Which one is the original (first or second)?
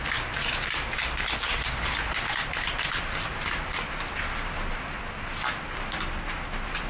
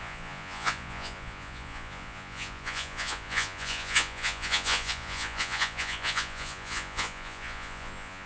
first